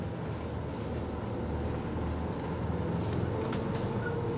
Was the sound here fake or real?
real